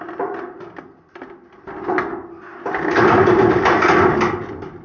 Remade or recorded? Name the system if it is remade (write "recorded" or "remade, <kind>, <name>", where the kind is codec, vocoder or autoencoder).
recorded